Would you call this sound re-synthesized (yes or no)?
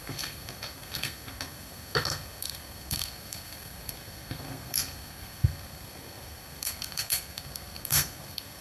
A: yes